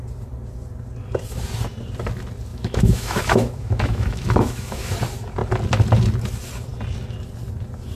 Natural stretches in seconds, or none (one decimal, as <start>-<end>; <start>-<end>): 0.0-2.5; 4.9-8.0